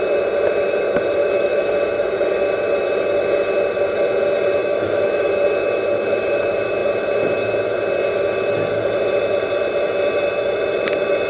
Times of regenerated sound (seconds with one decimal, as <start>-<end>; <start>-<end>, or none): 1.2-1.7; 4.6-5.3